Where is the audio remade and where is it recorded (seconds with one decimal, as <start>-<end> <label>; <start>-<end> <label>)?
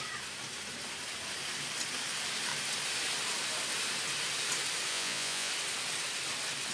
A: 0.0-4.9 recorded; 4.9-5.5 remade; 5.5-6.7 recorded